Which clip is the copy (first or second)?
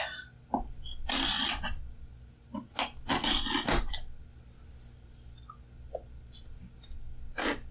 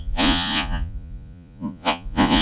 second